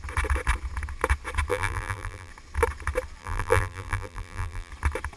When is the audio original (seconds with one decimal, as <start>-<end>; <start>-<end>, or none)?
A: 0.0-1.5; 2.3-3.2; 4.7-5.2